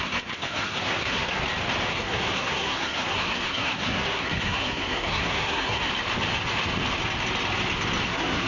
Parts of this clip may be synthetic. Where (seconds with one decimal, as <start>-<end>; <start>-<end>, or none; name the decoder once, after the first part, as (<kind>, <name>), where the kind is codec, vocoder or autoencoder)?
0.0-1.4 (codec, SNAC); 1.9-5.9; 8.1-8.5